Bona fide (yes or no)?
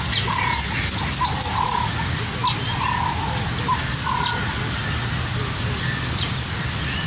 yes